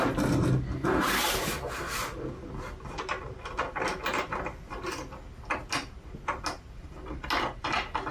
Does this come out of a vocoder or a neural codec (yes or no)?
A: no